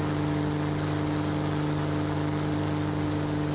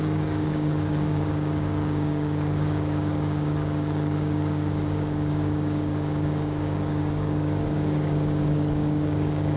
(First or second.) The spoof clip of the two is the second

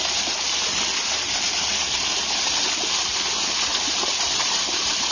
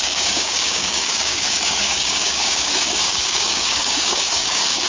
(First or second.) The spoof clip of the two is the second